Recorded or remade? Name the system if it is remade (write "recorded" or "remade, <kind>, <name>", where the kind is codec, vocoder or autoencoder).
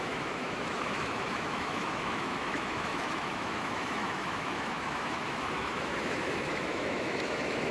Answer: remade, autoencoder, DAC-VAE